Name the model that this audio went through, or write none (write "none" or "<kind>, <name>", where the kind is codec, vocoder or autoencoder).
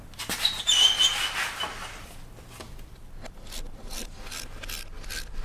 none